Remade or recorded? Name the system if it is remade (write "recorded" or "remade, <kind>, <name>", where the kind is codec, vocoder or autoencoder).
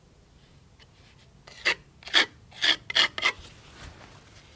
recorded